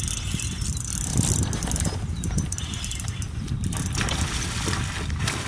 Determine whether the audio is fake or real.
real